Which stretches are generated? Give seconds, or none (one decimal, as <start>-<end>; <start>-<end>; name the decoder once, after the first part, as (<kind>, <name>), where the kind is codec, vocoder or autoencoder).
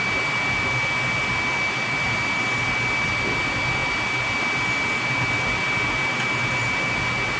none